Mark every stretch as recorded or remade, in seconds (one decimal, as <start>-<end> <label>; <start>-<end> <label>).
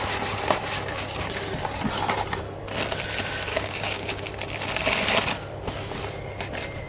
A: 0.0-3.5 recorded; 3.5-4.2 remade; 4.2-6.9 recorded